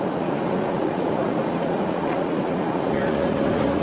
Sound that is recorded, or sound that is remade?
remade